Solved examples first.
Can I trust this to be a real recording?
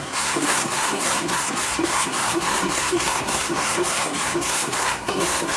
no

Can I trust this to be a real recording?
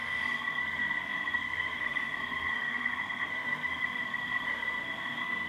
no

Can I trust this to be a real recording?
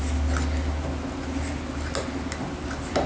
yes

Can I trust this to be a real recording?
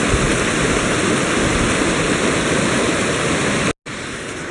yes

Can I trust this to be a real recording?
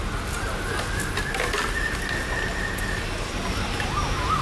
yes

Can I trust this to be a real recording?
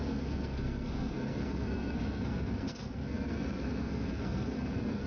no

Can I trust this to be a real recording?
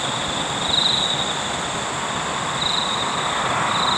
yes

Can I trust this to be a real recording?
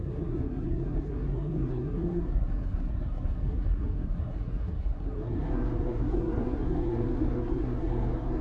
no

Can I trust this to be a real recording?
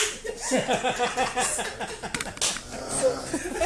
yes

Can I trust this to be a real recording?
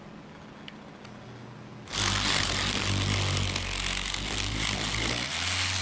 yes